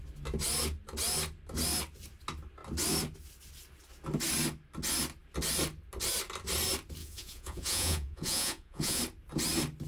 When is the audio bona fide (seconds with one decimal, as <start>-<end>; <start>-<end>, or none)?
0.0-7.0; 9.0-9.9